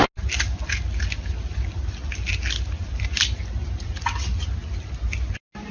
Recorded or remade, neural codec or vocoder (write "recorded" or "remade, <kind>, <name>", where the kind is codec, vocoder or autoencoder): recorded